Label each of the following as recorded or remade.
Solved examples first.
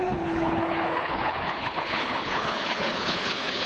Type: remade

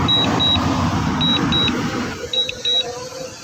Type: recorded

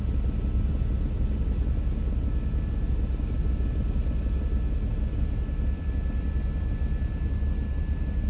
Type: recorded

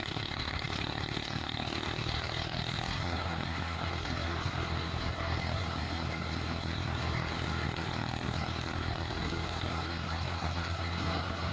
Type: remade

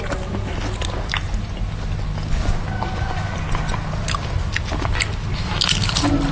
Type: recorded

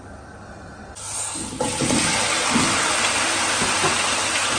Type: recorded